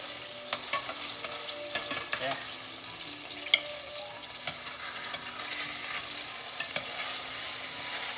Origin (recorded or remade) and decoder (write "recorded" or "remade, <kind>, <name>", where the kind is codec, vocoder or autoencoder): recorded